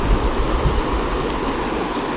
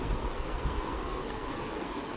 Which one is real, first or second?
first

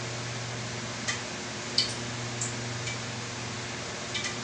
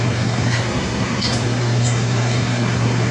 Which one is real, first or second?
first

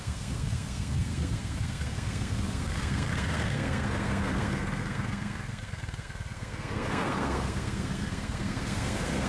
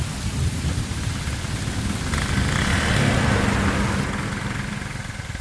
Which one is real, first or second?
second